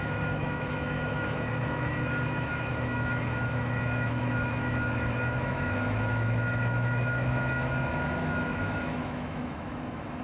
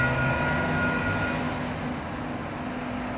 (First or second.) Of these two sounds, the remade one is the first